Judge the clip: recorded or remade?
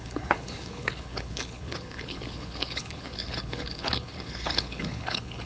remade